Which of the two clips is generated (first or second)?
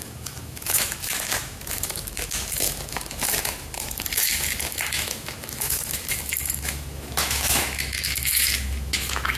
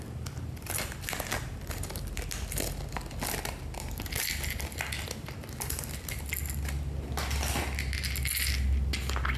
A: first